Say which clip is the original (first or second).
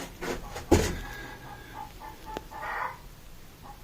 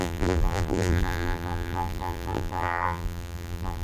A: first